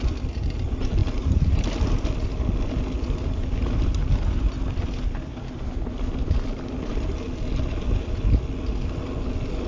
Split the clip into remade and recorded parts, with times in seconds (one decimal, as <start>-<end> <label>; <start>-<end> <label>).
0.0-1.0 recorded; 1.0-1.5 remade; 1.5-3.4 recorded; 3.4-4.1 remade; 4.1-9.7 recorded